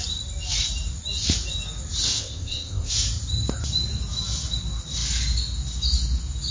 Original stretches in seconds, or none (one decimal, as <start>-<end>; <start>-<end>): 0.0-2.0; 2.9-6.5